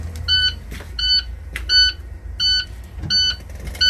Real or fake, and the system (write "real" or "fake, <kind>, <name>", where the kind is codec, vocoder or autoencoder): real